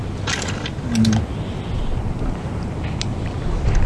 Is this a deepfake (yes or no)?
no